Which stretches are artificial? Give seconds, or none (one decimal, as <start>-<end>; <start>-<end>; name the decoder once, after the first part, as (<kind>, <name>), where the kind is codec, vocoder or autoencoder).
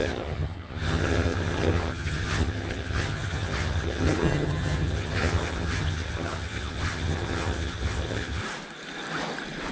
0.0-8.4 (vocoder, HiFi-GAN)